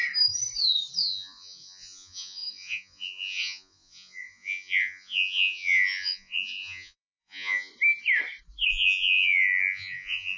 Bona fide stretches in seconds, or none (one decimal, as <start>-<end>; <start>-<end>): 0.0-1.0; 7.7-8.7